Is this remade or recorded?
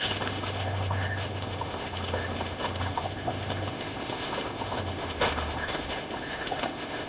remade